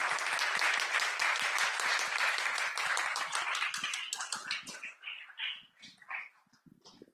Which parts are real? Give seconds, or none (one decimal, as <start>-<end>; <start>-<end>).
0.0-7.1